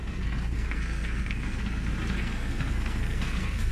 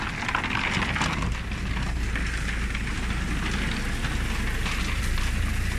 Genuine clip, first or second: second